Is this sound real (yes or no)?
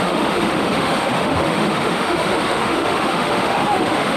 no